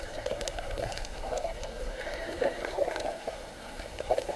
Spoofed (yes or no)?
yes